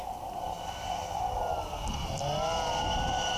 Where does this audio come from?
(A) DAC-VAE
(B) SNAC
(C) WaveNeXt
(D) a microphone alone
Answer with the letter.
D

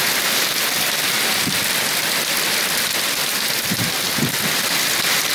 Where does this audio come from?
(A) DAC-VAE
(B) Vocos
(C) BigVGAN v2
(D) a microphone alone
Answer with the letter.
D